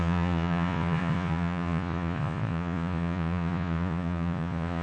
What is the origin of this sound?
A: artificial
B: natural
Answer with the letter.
A